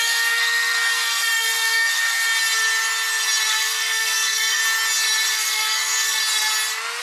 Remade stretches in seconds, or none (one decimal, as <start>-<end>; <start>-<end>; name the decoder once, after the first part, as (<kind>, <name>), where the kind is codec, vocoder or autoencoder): 0.0-2.3 (codec, SNAC); 3.5-4.6; 5.3-6.2